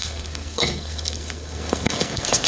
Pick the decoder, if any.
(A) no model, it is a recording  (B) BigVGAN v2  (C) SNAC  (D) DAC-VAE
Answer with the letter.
C